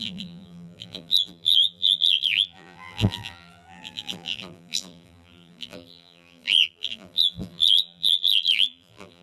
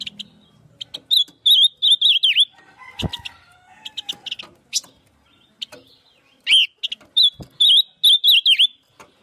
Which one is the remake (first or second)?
first